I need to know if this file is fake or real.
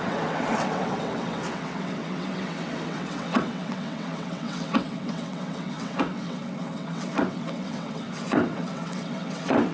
fake